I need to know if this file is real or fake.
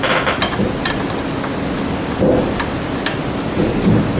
real